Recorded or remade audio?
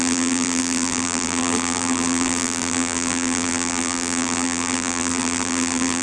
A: remade